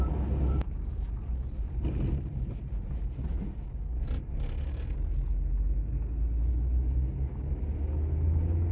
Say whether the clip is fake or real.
real